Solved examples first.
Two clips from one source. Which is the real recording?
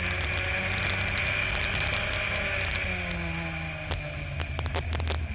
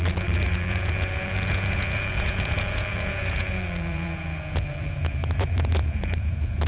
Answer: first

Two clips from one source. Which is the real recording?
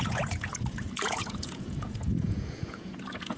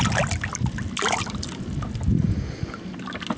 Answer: second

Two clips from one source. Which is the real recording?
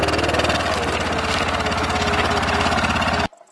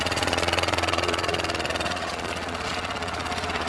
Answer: first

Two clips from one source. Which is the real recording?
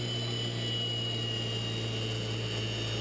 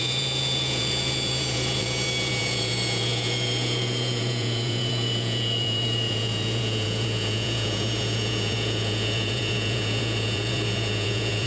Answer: first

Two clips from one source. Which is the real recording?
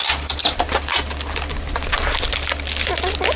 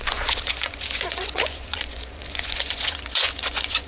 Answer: first